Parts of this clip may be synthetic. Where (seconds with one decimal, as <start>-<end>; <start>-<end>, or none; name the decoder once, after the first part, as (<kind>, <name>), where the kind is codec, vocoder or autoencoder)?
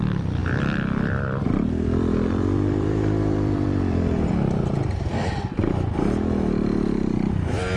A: 0.4-4.3 (vocoder, BigVGAN v2)